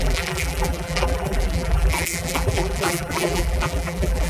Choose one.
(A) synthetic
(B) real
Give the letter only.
A